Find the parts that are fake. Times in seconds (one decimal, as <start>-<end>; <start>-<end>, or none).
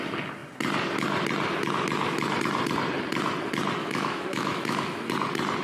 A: 3.8-5.1